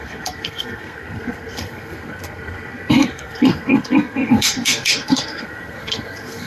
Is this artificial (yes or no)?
yes